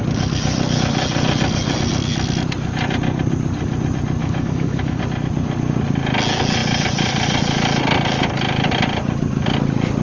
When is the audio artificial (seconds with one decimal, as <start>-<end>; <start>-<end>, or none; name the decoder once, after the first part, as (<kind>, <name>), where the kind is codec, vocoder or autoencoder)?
4.2-5.0 (autoencoder, DAC-VAE)